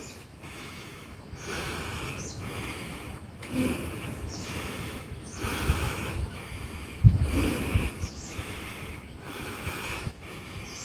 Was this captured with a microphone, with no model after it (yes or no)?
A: no